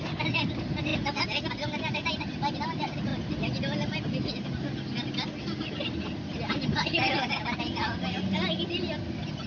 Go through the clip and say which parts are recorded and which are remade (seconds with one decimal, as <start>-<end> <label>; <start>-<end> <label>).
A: 0.0-9.5 recorded